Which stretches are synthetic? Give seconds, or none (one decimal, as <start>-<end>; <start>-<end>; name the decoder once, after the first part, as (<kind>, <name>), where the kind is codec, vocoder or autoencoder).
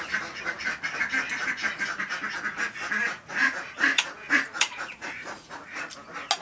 3.0-5.9 (vocoder, Vocos)